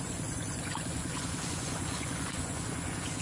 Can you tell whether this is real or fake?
fake